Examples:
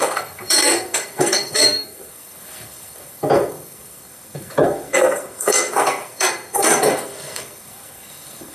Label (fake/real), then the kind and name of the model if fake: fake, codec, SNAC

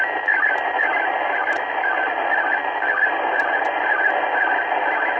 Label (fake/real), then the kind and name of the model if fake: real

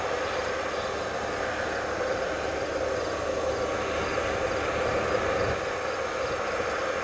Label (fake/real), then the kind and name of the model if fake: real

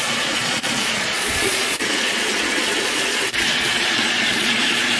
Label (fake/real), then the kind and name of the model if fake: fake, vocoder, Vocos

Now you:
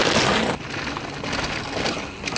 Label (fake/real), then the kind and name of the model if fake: real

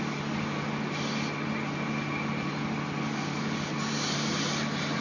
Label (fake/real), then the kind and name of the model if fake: real